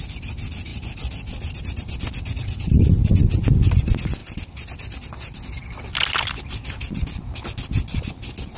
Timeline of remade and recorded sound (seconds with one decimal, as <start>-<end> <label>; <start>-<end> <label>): 0.0-8.6 recorded